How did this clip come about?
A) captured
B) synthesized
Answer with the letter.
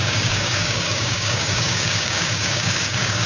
B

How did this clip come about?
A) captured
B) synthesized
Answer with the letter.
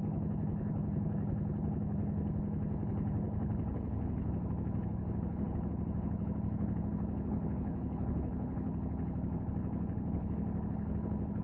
B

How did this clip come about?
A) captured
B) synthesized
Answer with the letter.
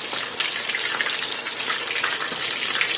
A